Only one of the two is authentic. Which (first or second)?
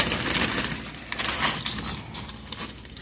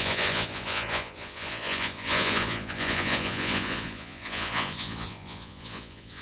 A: first